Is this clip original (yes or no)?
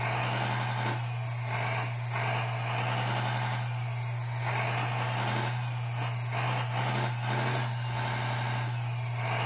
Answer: yes